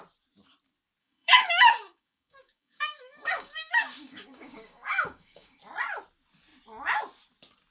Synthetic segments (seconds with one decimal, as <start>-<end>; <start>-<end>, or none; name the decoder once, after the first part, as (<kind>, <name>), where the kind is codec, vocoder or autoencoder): 1.0-5.6 (codec, DAC)